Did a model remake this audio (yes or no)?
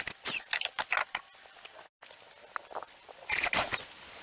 yes